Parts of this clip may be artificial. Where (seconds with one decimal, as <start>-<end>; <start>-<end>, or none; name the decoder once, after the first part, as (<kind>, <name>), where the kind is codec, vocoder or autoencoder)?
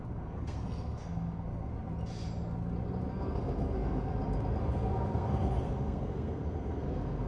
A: 0.0-1.7 (codec, SNAC); 3.1-4.1; 4.6-7.3